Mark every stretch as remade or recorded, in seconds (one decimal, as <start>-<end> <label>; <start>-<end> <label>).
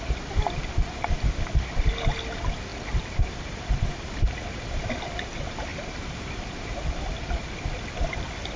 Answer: 0.0-2.7 recorded; 2.7-3.8 remade; 3.8-8.6 recorded